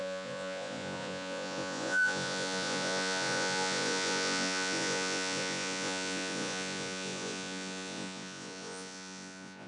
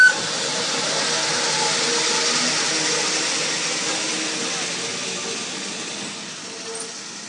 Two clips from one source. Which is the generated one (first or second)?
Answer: first